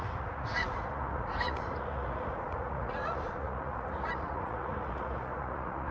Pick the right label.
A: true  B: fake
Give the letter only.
B